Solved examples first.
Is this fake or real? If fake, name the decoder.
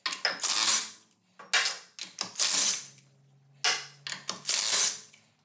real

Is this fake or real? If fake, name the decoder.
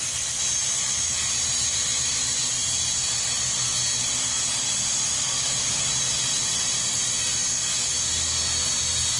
real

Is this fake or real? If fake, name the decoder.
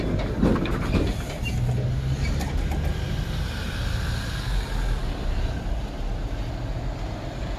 real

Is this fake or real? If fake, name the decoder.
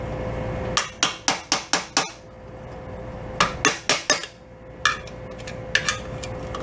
real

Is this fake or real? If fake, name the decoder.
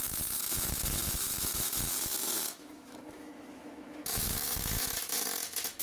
fake, autoencoder, DAC-VAE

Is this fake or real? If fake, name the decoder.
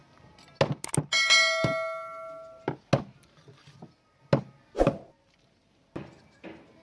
real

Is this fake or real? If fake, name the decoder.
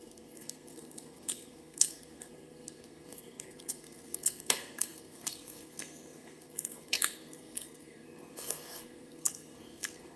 fake, codec, SNAC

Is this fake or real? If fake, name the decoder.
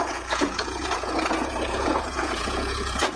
fake, vocoder, Vocos